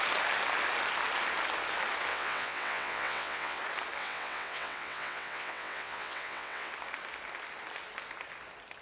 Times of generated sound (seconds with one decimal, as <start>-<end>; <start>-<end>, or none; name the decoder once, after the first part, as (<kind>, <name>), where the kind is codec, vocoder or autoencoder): 2.1-3.6 (vocoder, WaveNeXt); 4.0-6.7

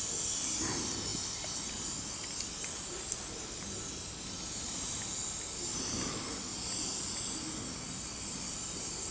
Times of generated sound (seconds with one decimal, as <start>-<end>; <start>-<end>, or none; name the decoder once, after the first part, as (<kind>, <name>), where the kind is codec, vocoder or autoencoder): none